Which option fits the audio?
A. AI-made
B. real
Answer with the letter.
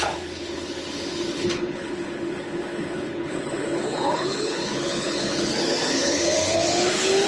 A